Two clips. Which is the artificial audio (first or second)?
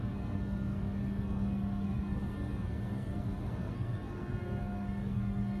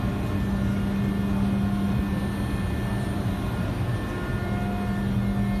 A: first